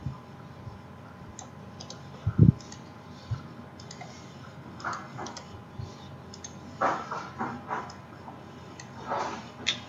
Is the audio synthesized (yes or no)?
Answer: no